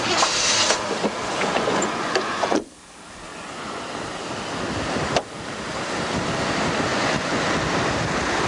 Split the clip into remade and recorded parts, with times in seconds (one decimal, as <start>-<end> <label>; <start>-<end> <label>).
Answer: 0.0-1.2 recorded; 1.2-2.7 remade; 2.7-3.3 recorded; 3.3-3.8 remade; 3.8-6.9 recorded; 6.9-7.4 remade; 7.4-8.5 recorded